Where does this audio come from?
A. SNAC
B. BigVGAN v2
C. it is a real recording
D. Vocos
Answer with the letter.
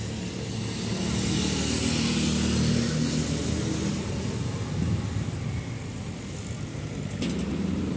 C